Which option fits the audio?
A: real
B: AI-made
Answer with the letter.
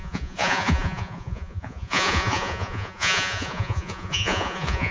B